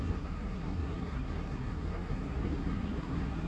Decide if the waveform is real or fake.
fake